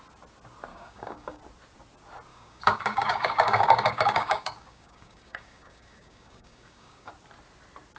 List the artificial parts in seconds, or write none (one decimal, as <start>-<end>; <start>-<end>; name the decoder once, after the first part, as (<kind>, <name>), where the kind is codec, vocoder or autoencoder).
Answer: 0.7-1.4 (codec, DAC); 2.3-7.1